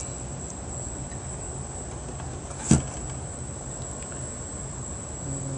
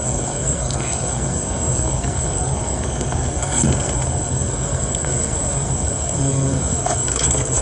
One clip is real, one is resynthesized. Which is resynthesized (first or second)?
second